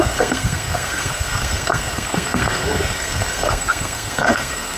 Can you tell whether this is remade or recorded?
remade